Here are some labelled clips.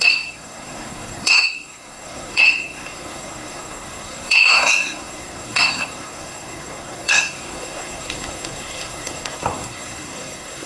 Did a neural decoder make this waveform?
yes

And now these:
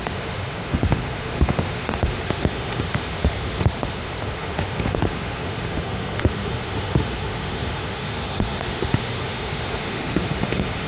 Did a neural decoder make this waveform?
yes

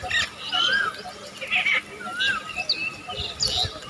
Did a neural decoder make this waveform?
no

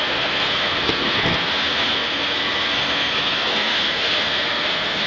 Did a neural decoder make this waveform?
yes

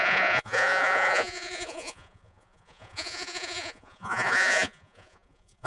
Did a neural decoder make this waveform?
yes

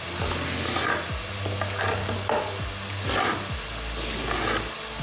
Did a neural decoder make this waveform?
no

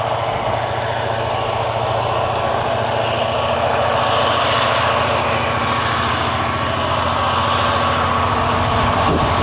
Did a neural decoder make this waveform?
no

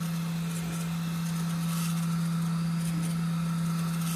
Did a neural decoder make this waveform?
no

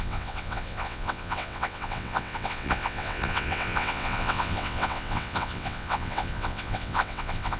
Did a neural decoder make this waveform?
yes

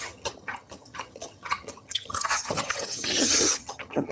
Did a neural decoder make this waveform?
yes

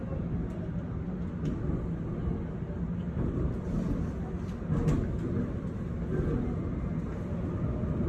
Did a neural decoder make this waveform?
no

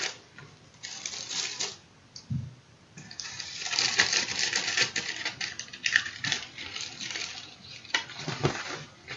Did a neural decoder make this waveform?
yes